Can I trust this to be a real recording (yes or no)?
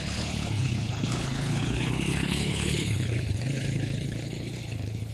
no